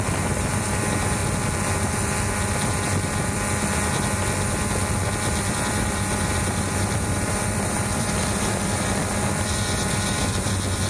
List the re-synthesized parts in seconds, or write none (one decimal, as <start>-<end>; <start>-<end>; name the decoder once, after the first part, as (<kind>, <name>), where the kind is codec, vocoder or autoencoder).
0.0-1.2 (vocoder, BigVGAN v2); 5.5-10.9